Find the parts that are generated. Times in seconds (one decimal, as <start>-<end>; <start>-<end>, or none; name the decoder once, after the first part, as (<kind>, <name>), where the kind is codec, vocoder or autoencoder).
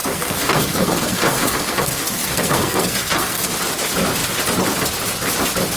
0.0-3.5 (codec, SNAC)